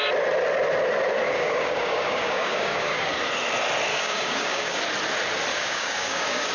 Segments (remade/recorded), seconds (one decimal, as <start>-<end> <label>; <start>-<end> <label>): 0.0-1.3 recorded; 1.3-3.1 remade; 3.1-3.9 recorded; 3.9-4.8 remade; 4.8-5.5 recorded; 5.5-6.5 remade